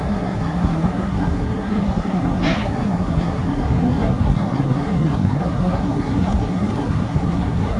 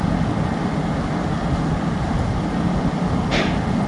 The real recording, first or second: second